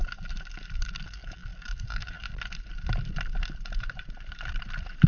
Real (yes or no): no